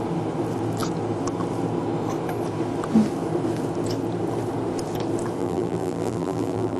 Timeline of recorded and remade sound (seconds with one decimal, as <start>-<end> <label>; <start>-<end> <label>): 0.0-5.4 recorded; 5.4-6.8 remade